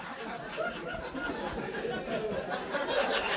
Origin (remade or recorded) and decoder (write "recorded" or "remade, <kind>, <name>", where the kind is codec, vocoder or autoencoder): recorded